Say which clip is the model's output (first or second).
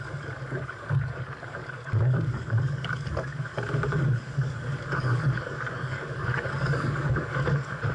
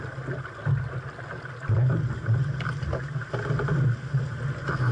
first